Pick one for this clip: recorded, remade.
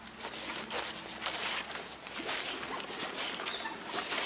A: recorded